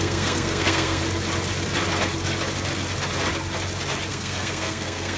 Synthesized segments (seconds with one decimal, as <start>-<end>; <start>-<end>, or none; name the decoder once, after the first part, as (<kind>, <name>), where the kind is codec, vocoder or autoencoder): 0.0-1.0 (codec, SNAC); 4.1-5.2